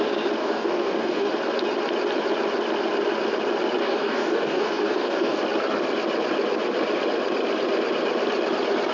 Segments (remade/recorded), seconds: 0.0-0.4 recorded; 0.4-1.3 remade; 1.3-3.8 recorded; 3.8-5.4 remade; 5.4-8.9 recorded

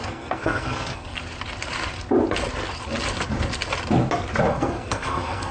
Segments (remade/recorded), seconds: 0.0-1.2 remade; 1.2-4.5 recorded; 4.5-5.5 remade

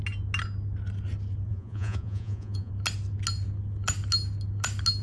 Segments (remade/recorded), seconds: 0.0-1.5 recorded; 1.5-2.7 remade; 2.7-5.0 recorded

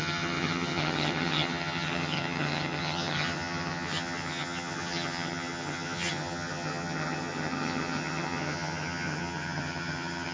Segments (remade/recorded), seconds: 0.0-10.3 remade